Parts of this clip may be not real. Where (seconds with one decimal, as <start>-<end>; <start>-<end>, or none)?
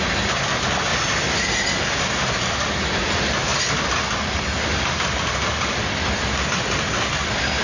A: none